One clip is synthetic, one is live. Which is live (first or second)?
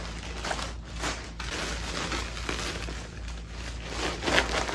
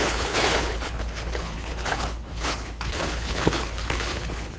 first